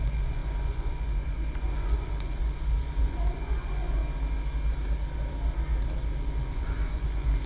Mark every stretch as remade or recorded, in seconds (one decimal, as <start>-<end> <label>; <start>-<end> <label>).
0.0-4.0 remade; 4.0-6.5 recorded; 6.5-7.5 remade